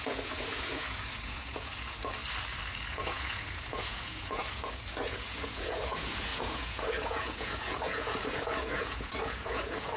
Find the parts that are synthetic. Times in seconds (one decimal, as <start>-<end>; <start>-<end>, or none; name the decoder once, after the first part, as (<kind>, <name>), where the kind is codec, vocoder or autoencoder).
0.0-2.2 (vocoder, Vocos); 2.9-10.0